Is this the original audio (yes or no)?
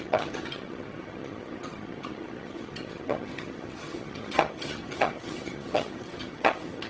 no